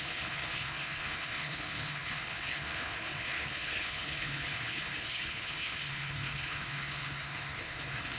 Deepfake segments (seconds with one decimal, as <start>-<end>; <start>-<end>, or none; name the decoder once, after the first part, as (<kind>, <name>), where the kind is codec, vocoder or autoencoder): 0.0-8.2 (codec, HILCodec)